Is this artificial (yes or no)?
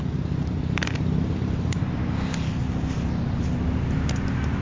no